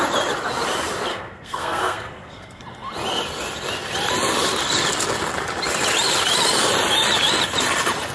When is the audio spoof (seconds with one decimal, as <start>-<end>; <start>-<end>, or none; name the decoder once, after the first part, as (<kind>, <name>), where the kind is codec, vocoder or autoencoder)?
1.1-2.6 (codec, SNAC)